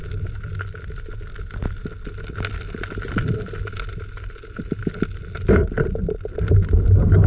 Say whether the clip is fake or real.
real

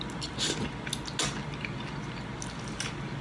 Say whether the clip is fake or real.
real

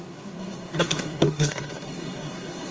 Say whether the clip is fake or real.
fake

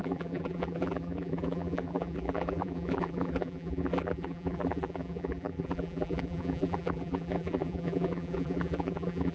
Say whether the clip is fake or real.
fake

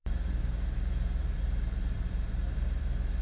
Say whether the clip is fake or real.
fake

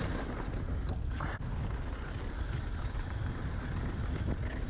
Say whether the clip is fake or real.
real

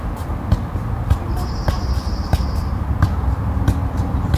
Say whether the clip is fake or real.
real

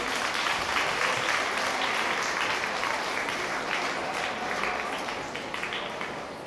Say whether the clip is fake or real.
real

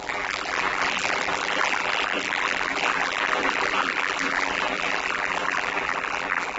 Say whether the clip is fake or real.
fake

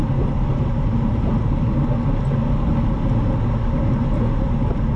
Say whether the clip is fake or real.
real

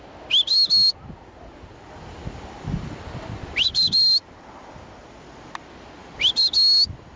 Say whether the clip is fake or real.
real